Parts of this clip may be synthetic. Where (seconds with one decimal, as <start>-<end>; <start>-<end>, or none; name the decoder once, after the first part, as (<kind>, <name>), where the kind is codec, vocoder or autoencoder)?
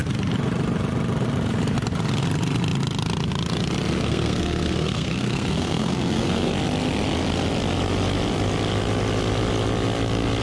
4.0-6.5 (codec, SNAC)